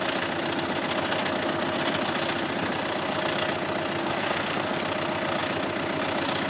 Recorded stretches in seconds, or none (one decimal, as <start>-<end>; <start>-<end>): 0.0-4.0; 4.8-6.5